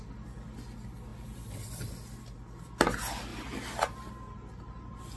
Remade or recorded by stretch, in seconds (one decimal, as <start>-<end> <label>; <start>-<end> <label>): 0.0-3.3 recorded; 3.3-4.1 remade; 4.1-5.2 recorded